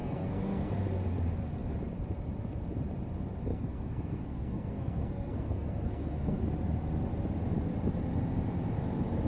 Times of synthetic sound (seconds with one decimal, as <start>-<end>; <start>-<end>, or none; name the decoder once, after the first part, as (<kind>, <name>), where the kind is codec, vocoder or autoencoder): 0.0-0.7 (codec, SNAC); 3.5-6.4